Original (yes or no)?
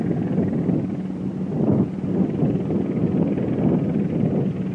yes